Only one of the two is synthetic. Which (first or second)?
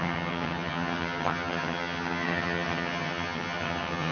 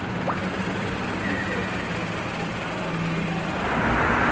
first